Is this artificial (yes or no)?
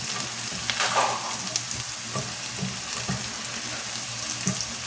no